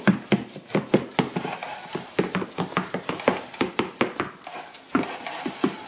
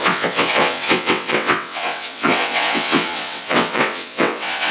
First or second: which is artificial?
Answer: second